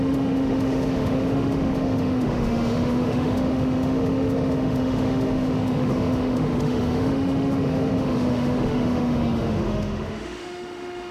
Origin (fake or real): fake